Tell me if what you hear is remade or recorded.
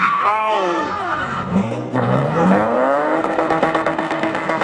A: remade